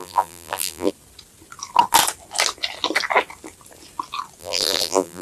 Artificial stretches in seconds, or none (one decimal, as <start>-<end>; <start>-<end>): 0.0-0.9; 4.4-5.2